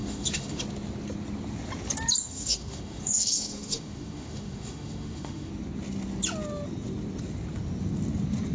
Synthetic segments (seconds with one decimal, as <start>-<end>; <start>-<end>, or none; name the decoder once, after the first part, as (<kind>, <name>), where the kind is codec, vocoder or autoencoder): 0.0-0.6 (autoencoder, DAC-VAE); 2.2-5.5